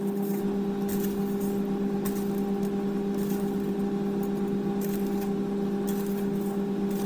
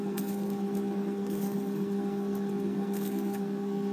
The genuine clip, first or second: first